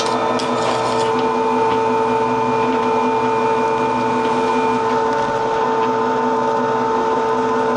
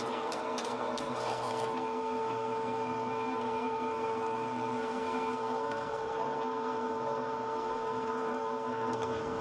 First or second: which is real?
first